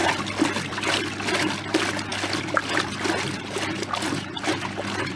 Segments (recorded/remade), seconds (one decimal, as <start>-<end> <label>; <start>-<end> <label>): 0.0-5.2 recorded